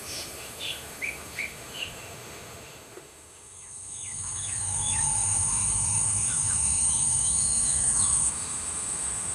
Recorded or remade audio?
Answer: remade